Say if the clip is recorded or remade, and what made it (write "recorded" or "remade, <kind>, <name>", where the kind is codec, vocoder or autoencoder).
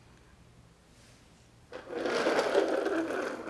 recorded